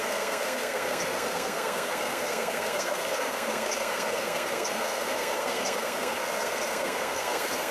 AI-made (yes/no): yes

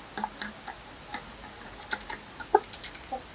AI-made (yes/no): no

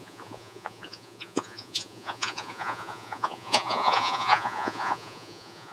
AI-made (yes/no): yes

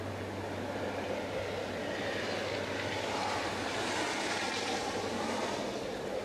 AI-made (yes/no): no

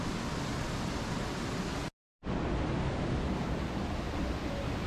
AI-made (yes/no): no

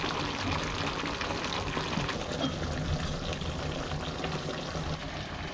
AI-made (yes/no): no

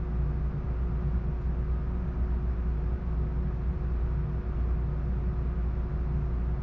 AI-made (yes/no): no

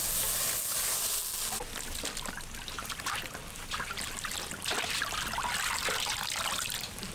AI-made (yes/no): no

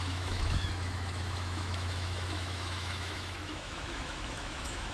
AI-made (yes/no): yes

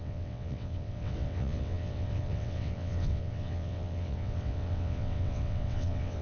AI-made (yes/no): yes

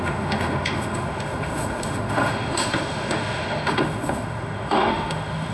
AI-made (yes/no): yes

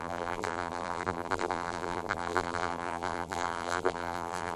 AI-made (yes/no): yes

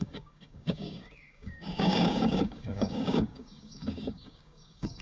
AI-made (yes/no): yes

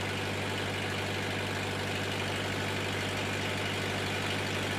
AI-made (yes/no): no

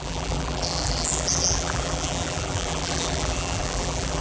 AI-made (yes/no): yes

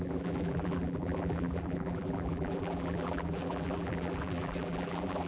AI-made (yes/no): yes